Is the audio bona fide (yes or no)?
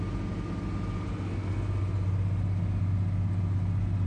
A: yes